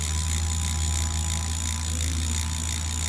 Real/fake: real